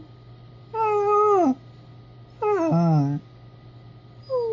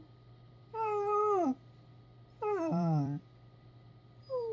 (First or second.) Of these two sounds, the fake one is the second